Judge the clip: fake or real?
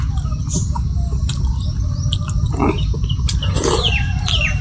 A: real